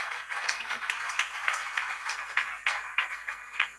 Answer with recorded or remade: remade